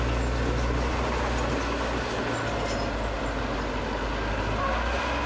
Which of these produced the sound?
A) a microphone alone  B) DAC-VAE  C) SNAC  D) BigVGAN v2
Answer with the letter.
A